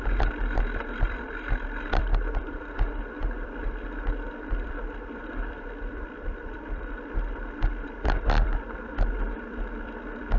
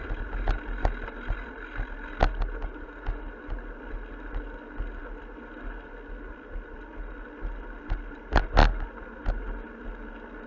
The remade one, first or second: first